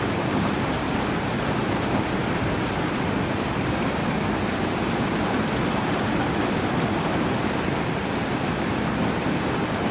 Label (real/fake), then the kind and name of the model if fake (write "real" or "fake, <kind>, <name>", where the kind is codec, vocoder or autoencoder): real